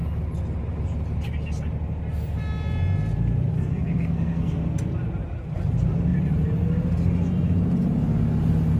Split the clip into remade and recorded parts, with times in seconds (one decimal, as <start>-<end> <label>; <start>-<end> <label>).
0.0-3.5 recorded; 3.5-4.6 remade; 4.6-8.8 recorded